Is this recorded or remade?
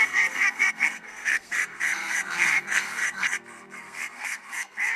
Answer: remade